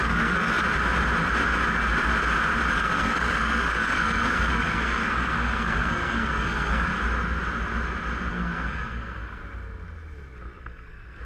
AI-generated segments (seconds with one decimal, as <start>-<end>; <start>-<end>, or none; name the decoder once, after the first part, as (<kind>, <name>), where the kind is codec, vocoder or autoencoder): 0.0-0.5 (codec, SNAC); 2.7-6.9; 8.3-9.4; 10.6-11.2